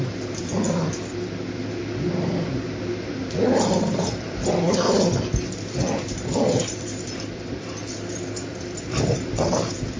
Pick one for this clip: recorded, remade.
remade